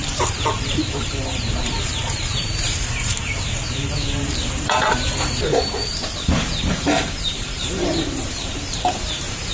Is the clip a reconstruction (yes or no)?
yes